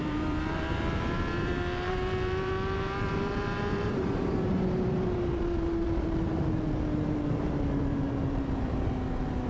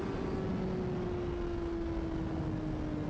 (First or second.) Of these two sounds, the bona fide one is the second